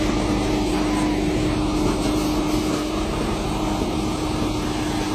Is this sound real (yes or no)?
yes